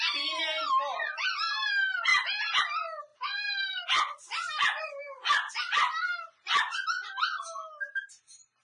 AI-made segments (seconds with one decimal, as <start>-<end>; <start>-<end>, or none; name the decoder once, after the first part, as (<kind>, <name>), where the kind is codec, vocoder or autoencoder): 3.1-6.5 (vocoder, BigVGAN v2)